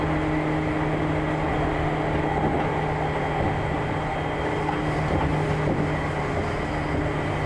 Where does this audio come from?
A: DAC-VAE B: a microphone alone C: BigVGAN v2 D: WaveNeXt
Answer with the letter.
B